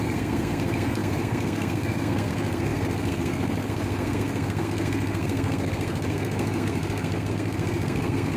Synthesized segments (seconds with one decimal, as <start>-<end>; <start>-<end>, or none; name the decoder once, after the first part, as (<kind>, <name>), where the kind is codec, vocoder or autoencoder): 0.0-8.4 (codec, SNAC)